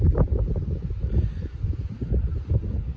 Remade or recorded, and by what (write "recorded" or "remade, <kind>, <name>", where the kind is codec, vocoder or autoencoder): recorded